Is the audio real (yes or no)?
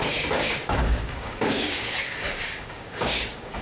no